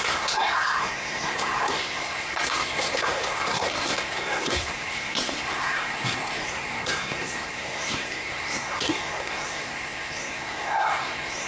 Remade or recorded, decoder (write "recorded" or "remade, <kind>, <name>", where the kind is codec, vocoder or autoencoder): remade, codec, SNAC